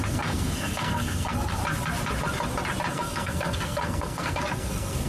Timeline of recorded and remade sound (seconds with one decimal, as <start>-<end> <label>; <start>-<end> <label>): 0.0-1.6 remade; 1.6-2.9 recorded; 2.9-5.1 remade